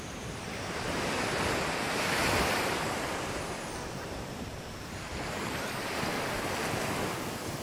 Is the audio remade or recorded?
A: remade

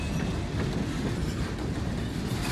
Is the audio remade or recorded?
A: recorded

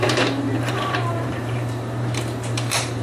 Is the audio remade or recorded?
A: remade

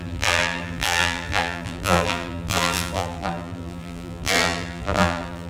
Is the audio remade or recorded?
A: remade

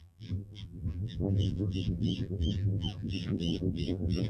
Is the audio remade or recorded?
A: remade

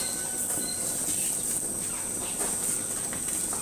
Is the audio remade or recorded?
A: recorded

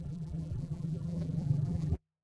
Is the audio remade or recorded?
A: remade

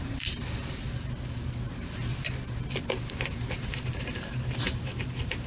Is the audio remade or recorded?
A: remade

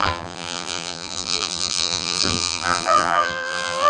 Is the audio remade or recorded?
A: remade